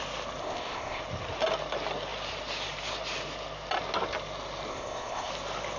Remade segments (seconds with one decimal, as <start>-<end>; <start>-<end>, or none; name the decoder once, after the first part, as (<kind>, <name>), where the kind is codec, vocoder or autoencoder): 0.4-1.0 (codec, ZipCodec); 4.7-5.3